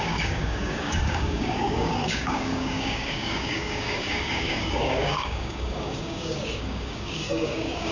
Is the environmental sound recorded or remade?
remade